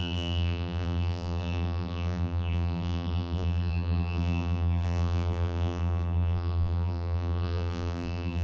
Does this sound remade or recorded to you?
remade